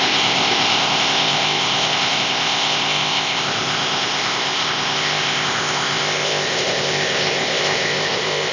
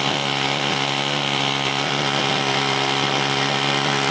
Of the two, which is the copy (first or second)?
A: first